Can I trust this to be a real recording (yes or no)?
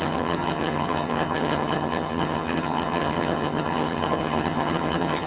no